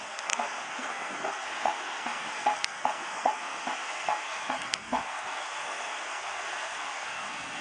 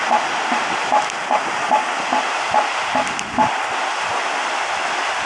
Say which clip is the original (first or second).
second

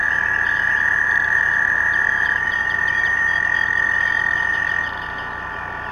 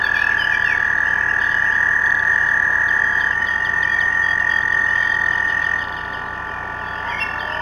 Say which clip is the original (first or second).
second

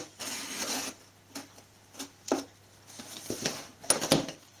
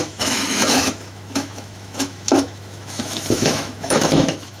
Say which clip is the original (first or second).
first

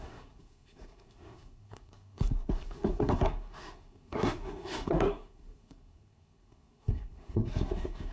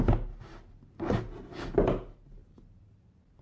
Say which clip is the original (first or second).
second